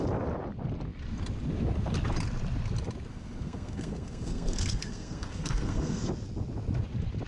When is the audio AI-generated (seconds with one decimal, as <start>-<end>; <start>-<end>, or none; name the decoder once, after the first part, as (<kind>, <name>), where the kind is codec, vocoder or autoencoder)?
3.1-6.1 (codec, SNAC)